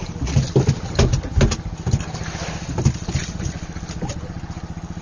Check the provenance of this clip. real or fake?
real